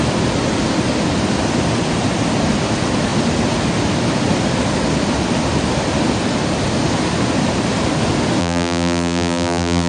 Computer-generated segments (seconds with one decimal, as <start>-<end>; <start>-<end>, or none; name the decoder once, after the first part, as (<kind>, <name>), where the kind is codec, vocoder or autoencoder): 8.4-9.9 (vocoder, BigVGAN v2)